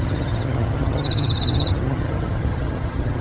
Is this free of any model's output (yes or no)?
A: no